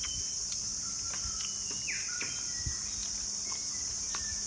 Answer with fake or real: real